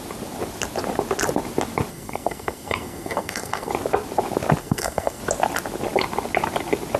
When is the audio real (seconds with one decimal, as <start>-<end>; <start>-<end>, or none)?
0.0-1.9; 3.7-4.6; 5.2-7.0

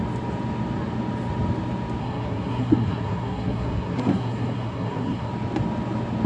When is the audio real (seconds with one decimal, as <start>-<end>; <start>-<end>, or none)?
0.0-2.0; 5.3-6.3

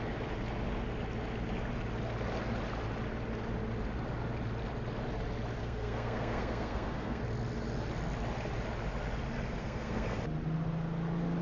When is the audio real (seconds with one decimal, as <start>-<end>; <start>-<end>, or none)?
0.0-5.6; 7.2-9.6; 10.2-11.4

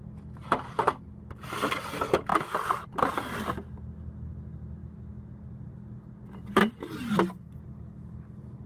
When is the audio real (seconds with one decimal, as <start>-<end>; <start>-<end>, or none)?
0.0-8.7